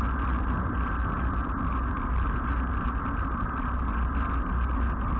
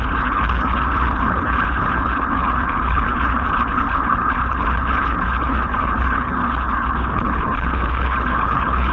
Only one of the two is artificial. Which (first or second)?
second